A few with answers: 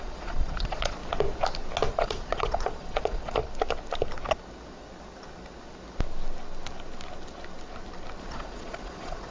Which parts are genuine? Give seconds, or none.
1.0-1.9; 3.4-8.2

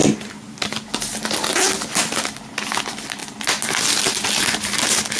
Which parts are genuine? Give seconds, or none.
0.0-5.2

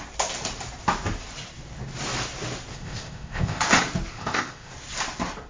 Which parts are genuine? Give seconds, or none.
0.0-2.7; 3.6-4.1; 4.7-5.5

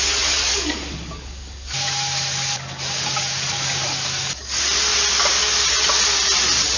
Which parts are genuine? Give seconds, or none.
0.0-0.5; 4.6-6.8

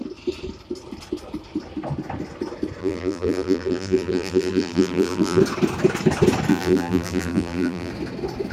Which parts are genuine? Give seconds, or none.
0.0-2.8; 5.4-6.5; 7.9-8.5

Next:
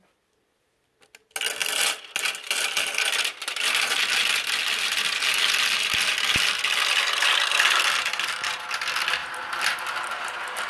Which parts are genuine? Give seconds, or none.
0.0-10.7